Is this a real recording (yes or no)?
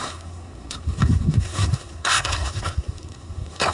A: no